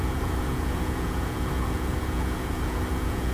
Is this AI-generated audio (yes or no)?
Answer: yes